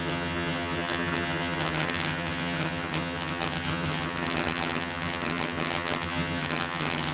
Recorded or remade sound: remade